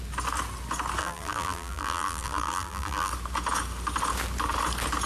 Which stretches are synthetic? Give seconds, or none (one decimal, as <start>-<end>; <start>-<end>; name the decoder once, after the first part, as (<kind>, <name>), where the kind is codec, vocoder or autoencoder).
1.0-3.1 (vocoder, BigVGAN v2)